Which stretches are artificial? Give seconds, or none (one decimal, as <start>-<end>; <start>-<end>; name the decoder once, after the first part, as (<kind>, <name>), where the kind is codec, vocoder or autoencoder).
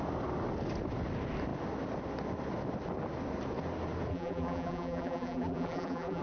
4.1-6.2 (vocoder, BigVGAN v2)